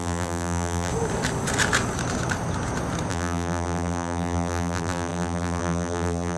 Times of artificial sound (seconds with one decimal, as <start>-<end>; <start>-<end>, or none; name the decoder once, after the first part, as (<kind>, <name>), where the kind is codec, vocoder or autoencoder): 0.0-0.9 (vocoder, BigVGAN v2); 3.1-6.4